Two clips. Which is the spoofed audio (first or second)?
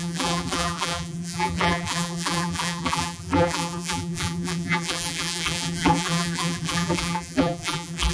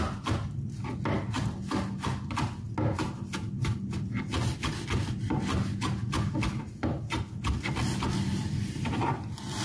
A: first